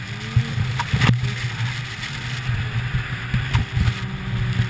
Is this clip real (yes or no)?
yes